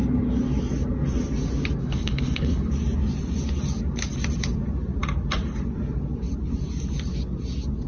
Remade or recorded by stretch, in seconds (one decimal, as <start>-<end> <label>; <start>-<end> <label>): 0.0-1.8 recorded; 1.8-2.7 remade; 2.7-7.9 recorded